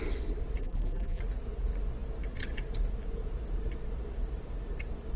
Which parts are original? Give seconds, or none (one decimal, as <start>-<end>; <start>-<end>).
0.0-0.6; 1.2-5.2